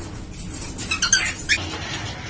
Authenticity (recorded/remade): recorded